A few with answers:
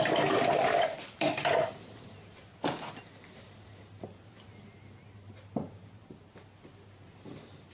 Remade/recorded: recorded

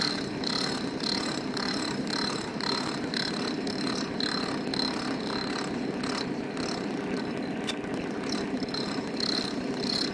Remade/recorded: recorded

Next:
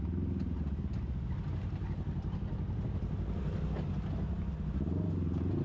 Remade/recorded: recorded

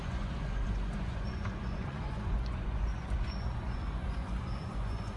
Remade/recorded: remade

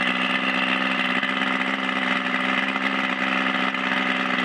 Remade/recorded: recorded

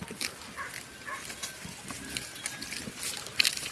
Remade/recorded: recorded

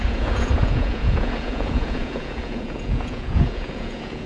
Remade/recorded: remade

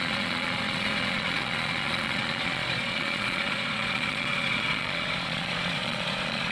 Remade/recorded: remade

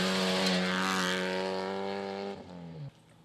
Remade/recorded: recorded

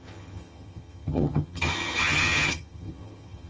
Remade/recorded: remade